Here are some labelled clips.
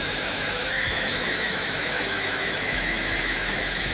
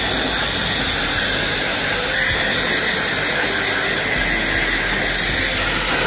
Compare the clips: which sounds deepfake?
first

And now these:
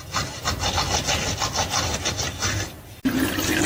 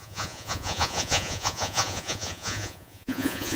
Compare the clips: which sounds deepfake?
second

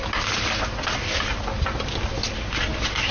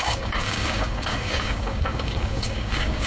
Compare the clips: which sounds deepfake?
second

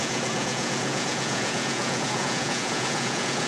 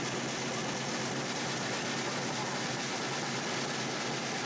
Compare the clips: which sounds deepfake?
first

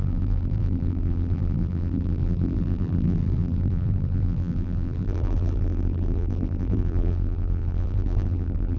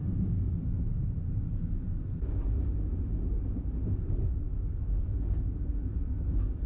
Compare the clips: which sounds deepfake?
first